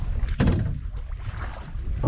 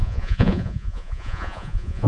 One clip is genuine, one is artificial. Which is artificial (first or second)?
second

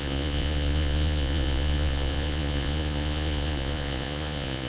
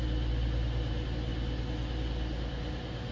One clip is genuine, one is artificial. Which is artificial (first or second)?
first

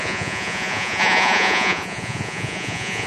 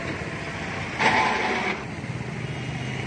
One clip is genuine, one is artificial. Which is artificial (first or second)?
first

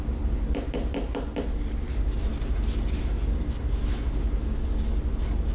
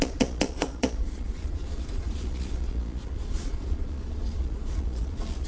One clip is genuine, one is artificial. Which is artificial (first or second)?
second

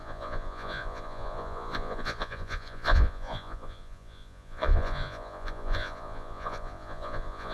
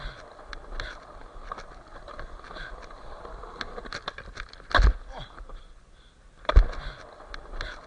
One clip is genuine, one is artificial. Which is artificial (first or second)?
first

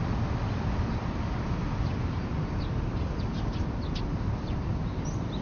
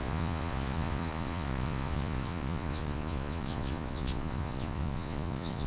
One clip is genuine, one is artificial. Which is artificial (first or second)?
second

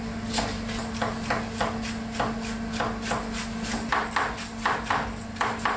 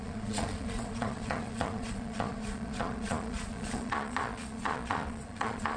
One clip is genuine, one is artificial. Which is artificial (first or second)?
second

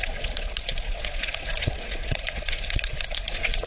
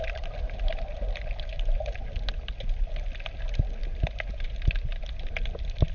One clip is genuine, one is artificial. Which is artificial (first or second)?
first